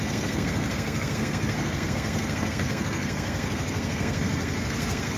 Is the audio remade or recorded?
remade